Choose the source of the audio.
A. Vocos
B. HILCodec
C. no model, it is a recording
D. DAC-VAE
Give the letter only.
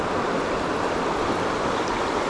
C